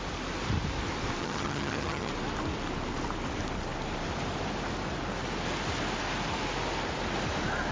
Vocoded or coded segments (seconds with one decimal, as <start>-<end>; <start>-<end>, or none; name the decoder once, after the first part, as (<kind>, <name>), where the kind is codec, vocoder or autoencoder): 1.2-2.1 (vocoder, HiFi-GAN)